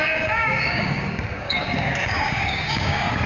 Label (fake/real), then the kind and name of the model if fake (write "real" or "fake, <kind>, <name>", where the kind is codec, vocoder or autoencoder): fake, codec, DAC